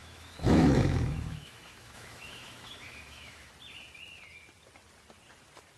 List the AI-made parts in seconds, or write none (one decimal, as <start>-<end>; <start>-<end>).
0.0-3.5